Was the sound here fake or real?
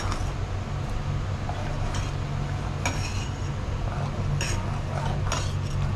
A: real